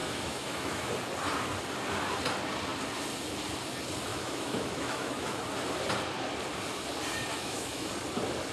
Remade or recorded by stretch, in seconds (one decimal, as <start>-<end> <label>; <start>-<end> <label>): 0.0-0.9 remade; 0.9-4.1 recorded; 4.1-5.4 remade; 5.4-7.3 recorded; 7.3-7.9 remade; 7.9-8.5 recorded